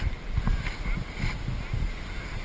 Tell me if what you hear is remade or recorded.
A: recorded